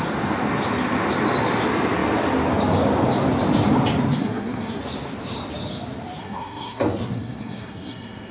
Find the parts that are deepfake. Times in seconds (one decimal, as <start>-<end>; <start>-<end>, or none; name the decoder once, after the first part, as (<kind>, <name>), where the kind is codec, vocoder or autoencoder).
4.2-4.8 (codec, SNAC); 6.2-8.3